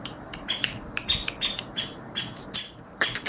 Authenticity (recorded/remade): remade